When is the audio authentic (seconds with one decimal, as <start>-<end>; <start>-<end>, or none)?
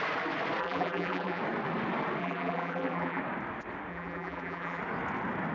0.0-0.6; 1.4-2.2; 3.2-3.9; 4.8-5.5